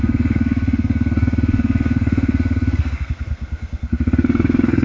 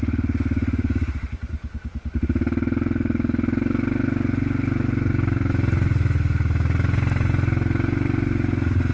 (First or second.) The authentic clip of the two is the second